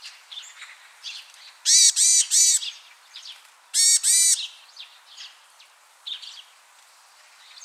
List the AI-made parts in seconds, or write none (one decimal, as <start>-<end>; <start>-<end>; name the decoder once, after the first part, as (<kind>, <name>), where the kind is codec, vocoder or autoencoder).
0.0-2.4 (vocoder, BigVGAN v2); 5.8-7.6